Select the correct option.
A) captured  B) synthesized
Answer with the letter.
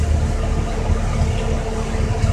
A